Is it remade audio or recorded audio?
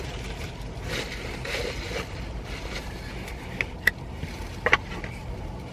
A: remade